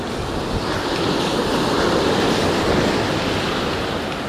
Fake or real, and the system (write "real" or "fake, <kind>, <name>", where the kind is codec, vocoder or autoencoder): real